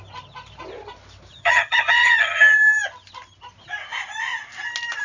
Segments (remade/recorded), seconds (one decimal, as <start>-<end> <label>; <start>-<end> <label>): 0.0-1.3 recorded; 1.3-2.8 remade; 2.8-5.0 recorded